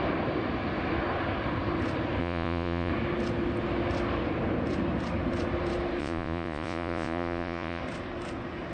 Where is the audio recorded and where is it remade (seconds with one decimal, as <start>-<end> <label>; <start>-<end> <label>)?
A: 0.0-2.2 recorded; 2.2-2.9 remade; 2.9-6.0 recorded; 6.0-7.8 remade; 7.8-8.7 recorded